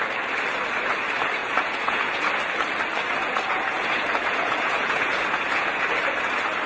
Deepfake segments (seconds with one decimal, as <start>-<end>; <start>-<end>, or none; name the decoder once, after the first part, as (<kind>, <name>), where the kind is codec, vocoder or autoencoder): 1.4-2.3 (vocoder, Vocos); 3.3-5.9